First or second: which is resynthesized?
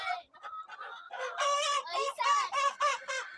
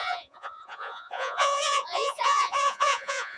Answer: second